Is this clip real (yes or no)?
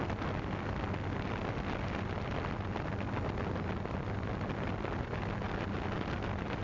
yes